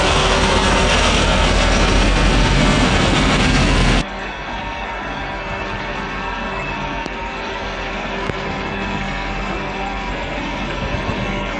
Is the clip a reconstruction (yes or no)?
yes